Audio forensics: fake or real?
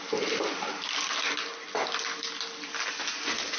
real